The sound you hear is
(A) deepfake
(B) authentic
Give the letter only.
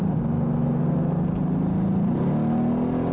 B